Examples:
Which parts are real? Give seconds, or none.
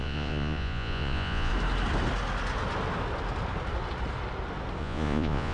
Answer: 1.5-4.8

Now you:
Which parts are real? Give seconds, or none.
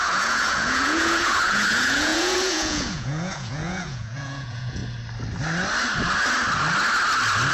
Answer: 4.8-7.5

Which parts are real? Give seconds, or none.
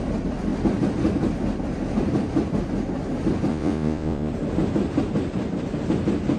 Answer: 0.0-3.5; 4.3-6.4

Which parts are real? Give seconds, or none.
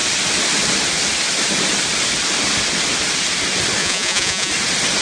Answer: 0.0-3.8; 4.5-5.0